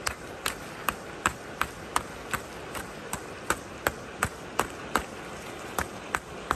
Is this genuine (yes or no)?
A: yes